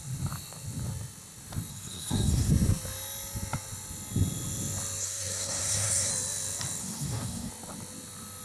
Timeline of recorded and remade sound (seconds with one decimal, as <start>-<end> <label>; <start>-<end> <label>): 0.0-1.7 recorded; 1.7-2.5 remade; 2.5-5.0 recorded; 5.0-6.1 remade; 6.1-6.8 recorded; 6.8-7.5 remade; 7.5-8.4 recorded